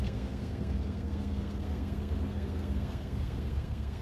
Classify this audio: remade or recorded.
remade